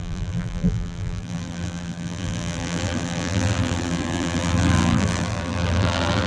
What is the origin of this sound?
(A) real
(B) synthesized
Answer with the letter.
B